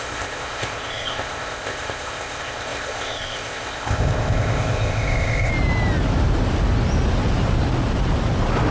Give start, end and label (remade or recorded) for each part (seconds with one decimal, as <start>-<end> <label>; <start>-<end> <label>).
0.0-5.5 remade; 5.5-8.7 recorded